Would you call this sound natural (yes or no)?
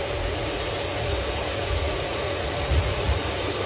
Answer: no